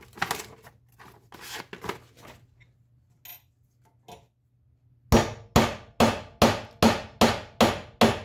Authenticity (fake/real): real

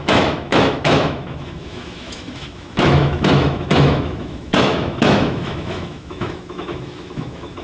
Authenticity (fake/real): fake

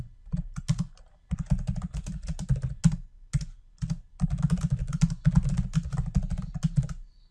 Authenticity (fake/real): real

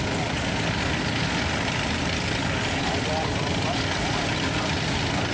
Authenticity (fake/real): real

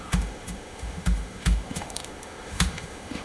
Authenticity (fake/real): fake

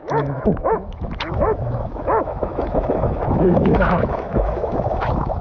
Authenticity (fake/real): fake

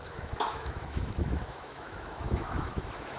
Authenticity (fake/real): fake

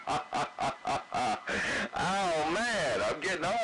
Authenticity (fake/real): real